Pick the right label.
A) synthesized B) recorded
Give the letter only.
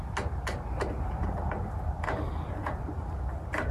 B